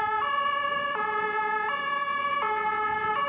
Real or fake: real